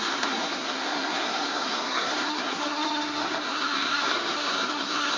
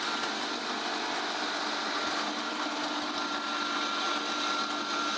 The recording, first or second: second